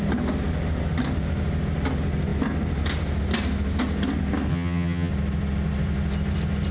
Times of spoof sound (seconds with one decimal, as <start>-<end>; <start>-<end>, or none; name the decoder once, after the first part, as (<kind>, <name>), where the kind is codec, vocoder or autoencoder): 4.5-5.1 (vocoder, HiFi-GAN)